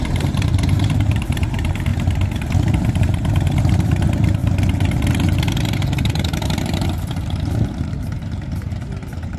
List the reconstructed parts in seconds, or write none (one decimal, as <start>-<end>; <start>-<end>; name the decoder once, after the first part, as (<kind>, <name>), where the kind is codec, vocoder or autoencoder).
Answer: 0.0-1.9 (vocoder, BigVGAN v2); 3.0-4.4; 5.1-9.4